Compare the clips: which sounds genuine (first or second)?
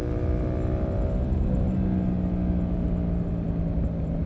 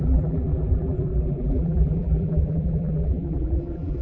first